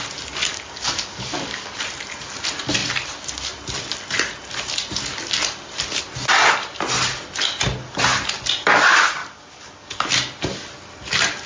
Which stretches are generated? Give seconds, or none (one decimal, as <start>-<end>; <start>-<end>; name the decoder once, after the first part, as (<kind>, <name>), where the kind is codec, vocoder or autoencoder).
0.4-1.8 (codec, DAC); 9.2-10.1